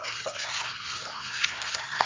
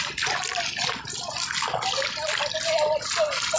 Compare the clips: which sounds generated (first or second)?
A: first